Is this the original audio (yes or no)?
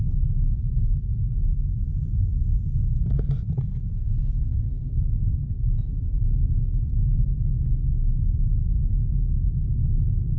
yes